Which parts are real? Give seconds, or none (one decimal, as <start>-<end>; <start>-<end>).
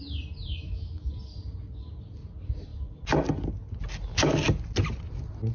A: 0.0-0.5; 1.1-5.5